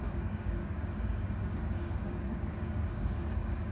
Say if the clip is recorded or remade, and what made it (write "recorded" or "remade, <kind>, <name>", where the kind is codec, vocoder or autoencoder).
remade, codec, DAC